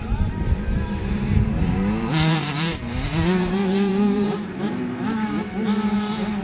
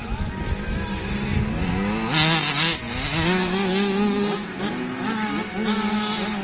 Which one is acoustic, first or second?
second